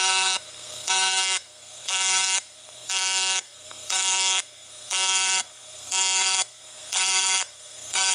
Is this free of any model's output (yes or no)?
no